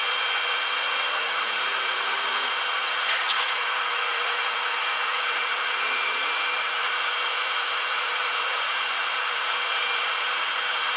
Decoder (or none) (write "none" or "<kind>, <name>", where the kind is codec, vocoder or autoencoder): vocoder, Vocos